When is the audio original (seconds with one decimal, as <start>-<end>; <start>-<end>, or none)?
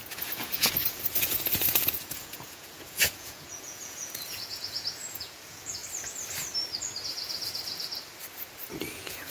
5.8-8.9